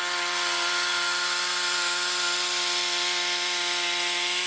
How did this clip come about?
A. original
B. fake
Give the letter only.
A